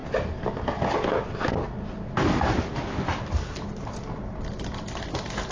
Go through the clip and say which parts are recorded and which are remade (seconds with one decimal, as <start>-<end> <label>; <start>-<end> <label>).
0.0-5.5 recorded